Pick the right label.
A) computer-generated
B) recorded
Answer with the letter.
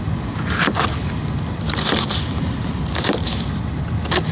B